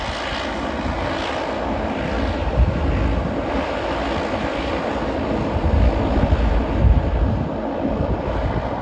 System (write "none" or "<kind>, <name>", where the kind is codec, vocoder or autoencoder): none